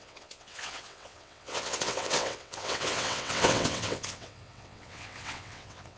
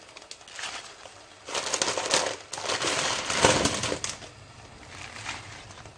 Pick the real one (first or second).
second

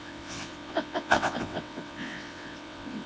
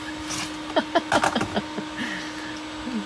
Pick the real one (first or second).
second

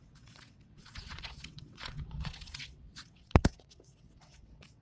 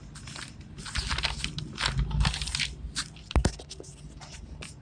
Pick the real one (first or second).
second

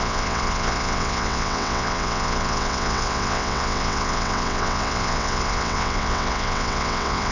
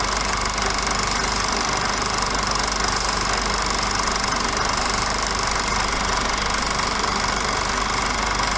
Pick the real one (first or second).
second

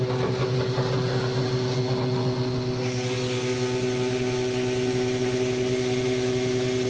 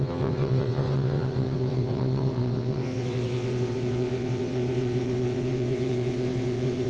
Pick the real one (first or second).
first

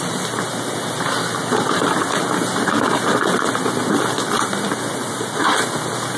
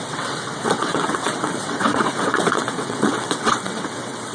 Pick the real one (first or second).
first